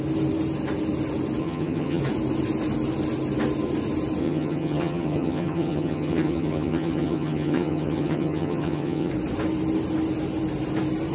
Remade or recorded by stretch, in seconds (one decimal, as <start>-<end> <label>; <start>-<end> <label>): 0.0-1.4 recorded; 1.4-2.0 remade; 2.0-4.2 recorded; 4.2-9.1 remade; 9.1-11.1 recorded